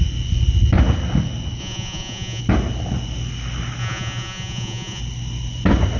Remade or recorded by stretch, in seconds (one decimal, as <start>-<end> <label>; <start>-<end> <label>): 0.0-1.6 recorded; 1.6-2.4 remade; 2.4-3.8 recorded; 3.8-5.0 remade; 5.0-6.0 recorded